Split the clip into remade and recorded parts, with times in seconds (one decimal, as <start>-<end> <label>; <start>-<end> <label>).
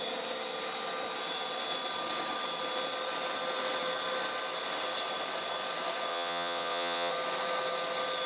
0.0-6.1 recorded; 6.1-7.1 remade; 7.1-8.3 recorded